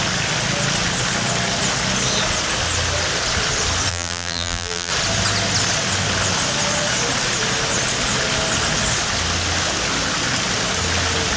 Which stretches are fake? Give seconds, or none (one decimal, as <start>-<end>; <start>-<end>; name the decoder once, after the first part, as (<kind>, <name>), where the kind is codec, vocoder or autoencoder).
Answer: 3.9-4.9 (vocoder, BigVGAN v2)